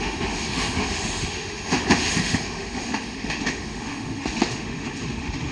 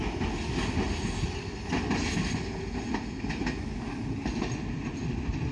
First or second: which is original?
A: second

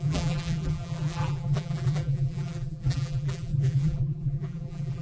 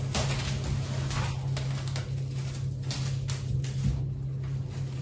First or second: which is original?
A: second